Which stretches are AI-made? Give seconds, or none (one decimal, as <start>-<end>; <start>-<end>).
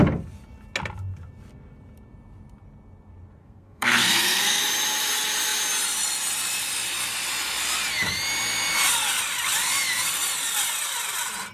3.4-4.6